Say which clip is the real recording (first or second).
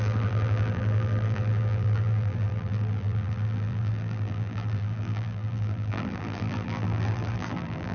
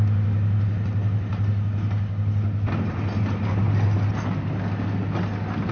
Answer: second